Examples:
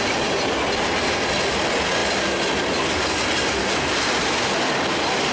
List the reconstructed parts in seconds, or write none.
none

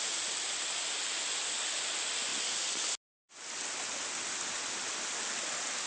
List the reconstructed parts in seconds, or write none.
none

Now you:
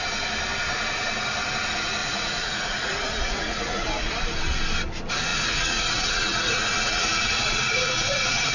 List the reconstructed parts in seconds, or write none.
2.0-4.1 (vocoder, Vocos); 5.3-8.5

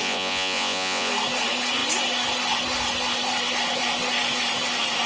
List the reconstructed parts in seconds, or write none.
0.0-1.1 (vocoder, Vocos)

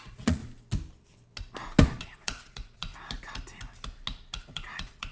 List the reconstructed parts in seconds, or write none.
0.0-0.4 (vocoder, Vocos); 2.0-2.9; 4.4-5.1